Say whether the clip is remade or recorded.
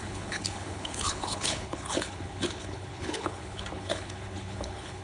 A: remade